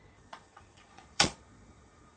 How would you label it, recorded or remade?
remade